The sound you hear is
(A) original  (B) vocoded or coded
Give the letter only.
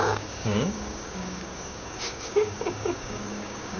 B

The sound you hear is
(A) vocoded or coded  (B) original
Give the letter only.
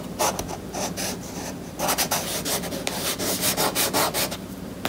B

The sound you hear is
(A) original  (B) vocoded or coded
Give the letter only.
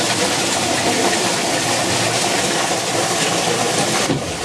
B